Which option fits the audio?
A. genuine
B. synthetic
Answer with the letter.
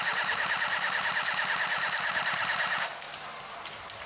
A